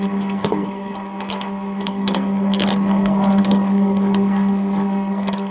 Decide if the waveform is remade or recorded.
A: remade